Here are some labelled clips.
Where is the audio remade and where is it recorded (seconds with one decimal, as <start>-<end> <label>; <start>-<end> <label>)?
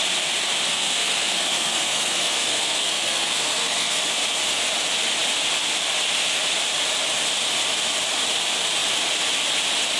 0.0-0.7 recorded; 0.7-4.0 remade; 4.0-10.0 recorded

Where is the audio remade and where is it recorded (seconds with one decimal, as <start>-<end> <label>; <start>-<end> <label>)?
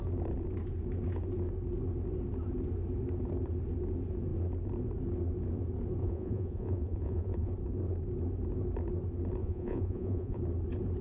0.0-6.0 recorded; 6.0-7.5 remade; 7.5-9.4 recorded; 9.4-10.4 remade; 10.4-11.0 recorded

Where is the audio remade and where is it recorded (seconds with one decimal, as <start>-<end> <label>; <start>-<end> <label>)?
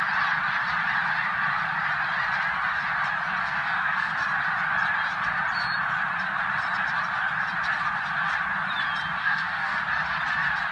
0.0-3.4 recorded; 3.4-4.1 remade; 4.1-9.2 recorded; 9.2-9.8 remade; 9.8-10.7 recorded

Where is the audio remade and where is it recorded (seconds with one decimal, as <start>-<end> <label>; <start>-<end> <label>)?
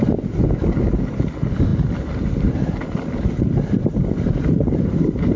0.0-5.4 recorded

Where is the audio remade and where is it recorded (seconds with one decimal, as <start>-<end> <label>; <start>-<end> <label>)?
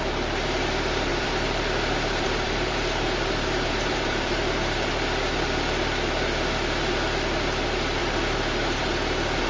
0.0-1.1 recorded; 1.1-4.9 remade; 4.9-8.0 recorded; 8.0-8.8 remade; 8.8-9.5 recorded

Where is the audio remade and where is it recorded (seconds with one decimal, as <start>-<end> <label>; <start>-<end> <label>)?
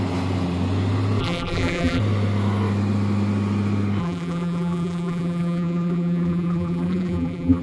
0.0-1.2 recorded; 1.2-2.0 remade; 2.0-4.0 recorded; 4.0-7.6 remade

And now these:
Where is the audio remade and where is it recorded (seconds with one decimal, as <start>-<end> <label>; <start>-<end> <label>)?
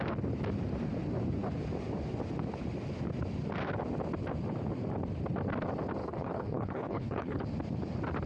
0.0-6.0 recorded; 6.0-7.4 remade; 7.4-8.3 recorded